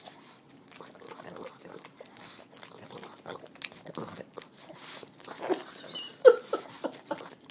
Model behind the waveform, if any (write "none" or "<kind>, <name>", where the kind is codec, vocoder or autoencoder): none